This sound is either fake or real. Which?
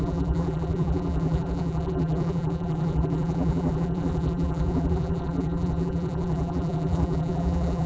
fake